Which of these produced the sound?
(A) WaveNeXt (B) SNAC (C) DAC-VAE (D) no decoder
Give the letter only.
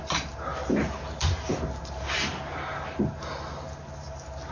D